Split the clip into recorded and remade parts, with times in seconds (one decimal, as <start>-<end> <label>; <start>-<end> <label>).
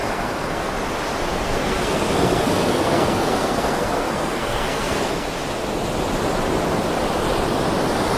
0.0-0.7 remade; 0.7-1.3 recorded; 1.3-5.3 remade; 5.3-8.2 recorded